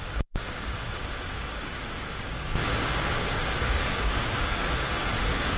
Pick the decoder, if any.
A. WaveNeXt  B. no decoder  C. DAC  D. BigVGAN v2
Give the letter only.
C